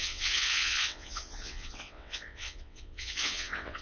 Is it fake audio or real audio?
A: fake